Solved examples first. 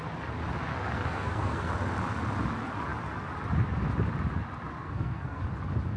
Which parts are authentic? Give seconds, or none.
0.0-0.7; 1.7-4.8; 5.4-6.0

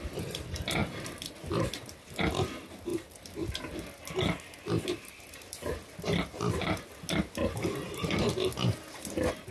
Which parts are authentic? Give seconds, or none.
0.0-0.8; 2.2-9.5

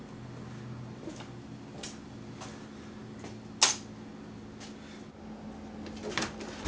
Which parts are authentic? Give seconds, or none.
0.0-6.7

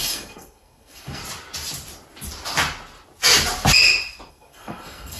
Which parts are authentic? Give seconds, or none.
1.2-4.3

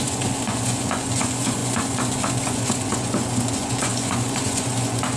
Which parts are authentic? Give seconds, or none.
none

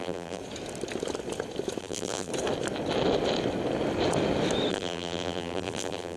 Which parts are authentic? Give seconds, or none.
0.4-1.8; 2.3-4.7

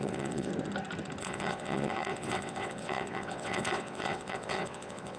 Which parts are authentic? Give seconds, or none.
0.5-1.2